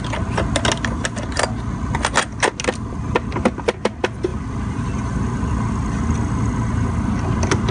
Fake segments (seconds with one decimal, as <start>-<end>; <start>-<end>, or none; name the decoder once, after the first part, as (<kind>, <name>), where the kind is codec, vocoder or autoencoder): 4.3-4.9 (vocoder, BigVGAN v2)